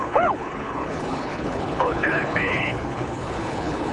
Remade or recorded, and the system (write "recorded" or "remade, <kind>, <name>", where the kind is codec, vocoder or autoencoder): remade, codec, HILCodec